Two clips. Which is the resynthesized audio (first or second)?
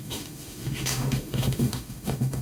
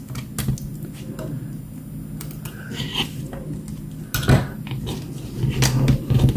first